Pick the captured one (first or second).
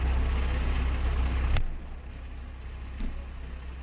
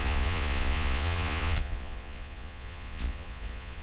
first